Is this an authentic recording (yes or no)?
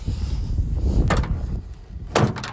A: yes